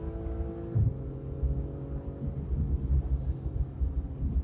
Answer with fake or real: real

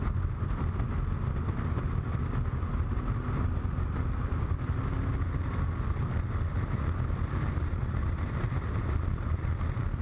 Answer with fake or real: real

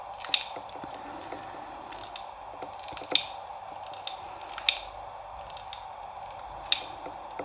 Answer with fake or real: real